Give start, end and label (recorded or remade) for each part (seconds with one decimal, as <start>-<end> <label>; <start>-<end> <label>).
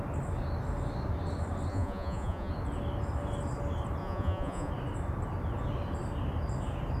0.0-1.7 recorded; 1.7-2.5 remade; 2.5-4.0 recorded; 4.0-4.7 remade; 4.7-7.0 recorded